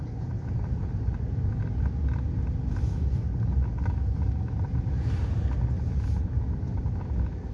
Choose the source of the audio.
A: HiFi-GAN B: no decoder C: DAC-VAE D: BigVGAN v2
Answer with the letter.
B